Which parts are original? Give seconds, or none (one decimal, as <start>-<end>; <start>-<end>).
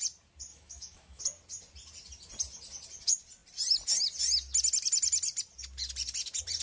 0.0-0.5; 1.2-6.6